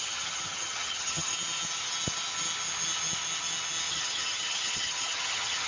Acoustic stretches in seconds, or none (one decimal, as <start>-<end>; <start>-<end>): 1.3-3.9